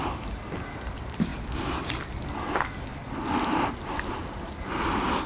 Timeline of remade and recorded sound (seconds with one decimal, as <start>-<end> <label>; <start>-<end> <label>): 0.0-5.3 recorded